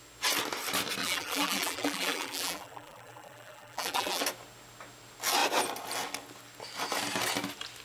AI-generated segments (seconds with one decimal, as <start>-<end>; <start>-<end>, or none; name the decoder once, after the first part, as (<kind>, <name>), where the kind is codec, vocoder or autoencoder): 1.0-4.2 (vocoder, BigVGAN v2)